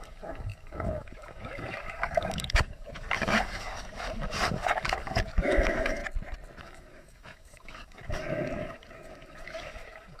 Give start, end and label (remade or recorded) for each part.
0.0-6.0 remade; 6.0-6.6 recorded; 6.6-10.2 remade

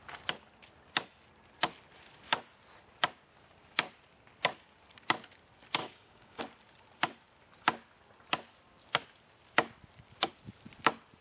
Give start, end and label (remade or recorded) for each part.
0.0-5.8 recorded; 5.8-6.4 remade; 6.4-11.2 recorded

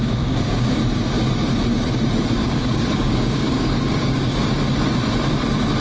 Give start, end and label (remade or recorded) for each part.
0.0-0.7 remade; 0.7-2.4 recorded; 2.4-4.4 remade; 4.4-5.8 recorded

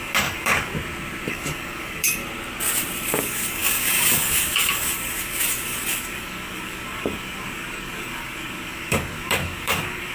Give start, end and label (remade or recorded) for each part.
0.0-0.7 remade; 0.7-1.3 recorded; 1.3-2.2 remade; 2.2-3.2 recorded; 3.2-10.1 remade

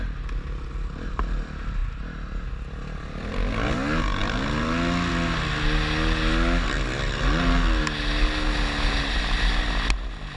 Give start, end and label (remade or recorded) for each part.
0.0-10.4 recorded

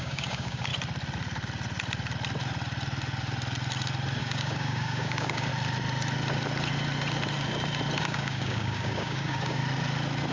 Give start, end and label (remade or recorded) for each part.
0.0-0.7 remade; 0.7-4.2 recorded; 4.2-5.5 remade; 5.5-8.0 recorded; 8.0-9.6 remade; 9.6-10.3 recorded